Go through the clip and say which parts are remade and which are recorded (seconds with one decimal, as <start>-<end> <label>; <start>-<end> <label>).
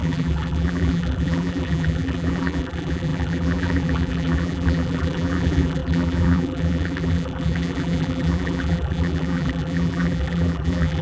0.0-11.0 remade